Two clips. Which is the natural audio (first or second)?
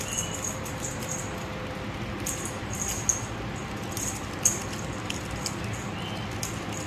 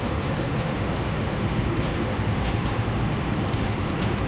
first